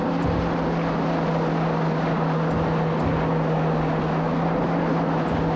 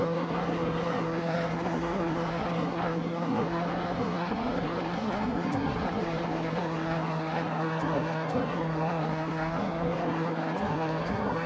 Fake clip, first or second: second